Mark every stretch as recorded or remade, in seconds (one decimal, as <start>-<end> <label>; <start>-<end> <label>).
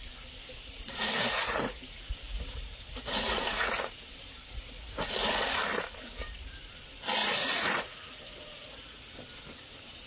0.0-0.4 recorded; 0.4-3.9 remade; 3.9-4.4 recorded; 4.4-5.1 remade; 5.1-7.2 recorded; 7.2-9.1 remade; 9.1-10.1 recorded